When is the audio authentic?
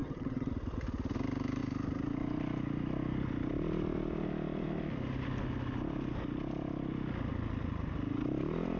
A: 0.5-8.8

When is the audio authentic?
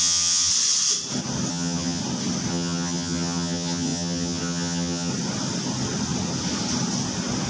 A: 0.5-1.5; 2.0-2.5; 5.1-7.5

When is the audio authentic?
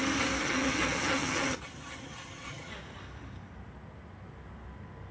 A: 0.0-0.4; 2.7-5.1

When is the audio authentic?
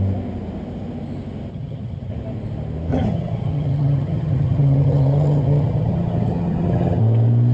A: 0.0-1.5; 2.1-2.9; 7.0-7.5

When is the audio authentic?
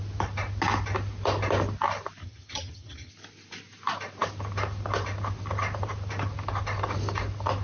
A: 0.0-2.2; 3.1-7.6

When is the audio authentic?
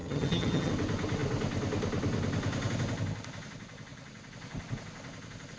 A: 0.7-5.6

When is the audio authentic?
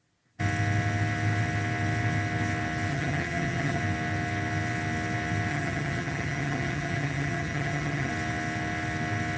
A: 0.0-2.9; 3.8-5.5; 8.1-9.4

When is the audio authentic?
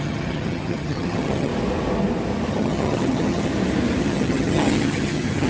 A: 1.5-2.5; 3.5-4.0